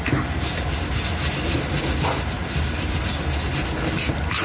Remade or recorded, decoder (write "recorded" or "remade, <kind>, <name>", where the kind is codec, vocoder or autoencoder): recorded